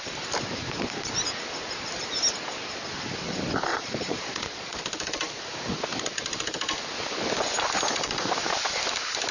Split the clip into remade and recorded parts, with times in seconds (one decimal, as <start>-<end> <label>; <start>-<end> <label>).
0.0-3.7 recorded; 3.7-4.8 remade; 4.8-9.3 recorded